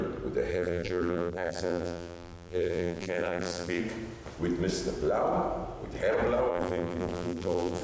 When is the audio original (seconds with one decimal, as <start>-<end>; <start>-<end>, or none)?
0.0-0.5; 3.8-6.5